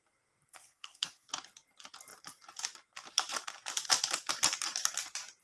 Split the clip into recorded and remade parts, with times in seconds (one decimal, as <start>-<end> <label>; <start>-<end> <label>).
0.0-0.5 recorded; 0.5-1.3 remade; 1.3-5.4 recorded